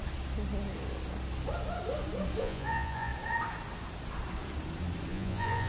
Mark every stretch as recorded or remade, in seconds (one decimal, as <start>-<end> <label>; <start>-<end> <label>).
0.0-2.4 recorded; 2.4-3.1 remade; 3.1-5.1 recorded; 5.1-5.7 remade